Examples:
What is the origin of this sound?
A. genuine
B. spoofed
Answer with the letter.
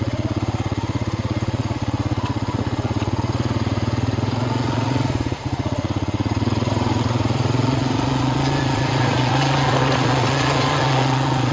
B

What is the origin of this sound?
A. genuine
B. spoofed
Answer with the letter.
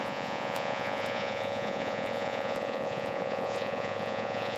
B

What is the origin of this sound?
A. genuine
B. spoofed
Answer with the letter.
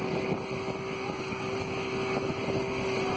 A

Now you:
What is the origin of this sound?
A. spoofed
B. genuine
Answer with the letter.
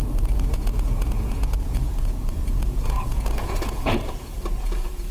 A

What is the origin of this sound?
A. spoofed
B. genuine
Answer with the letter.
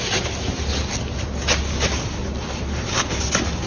B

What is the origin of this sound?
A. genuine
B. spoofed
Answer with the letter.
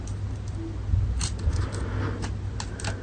A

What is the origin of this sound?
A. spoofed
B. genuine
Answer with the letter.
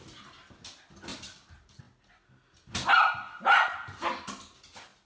B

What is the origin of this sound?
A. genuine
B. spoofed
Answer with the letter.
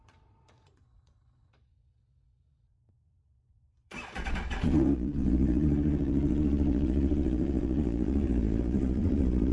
B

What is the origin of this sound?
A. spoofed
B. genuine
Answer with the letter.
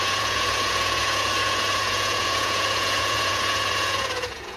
A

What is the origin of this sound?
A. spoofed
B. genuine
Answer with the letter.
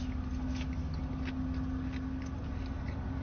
B